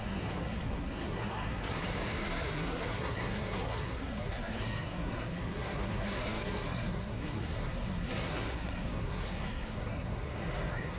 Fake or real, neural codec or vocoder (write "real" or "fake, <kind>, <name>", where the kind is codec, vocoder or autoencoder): fake, codec, SNAC